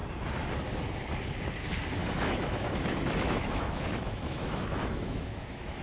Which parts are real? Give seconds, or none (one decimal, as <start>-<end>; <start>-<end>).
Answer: 0.0-2.0